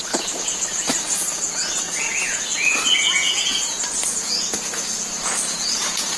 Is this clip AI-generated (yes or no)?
yes